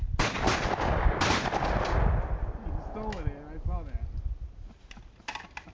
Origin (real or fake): real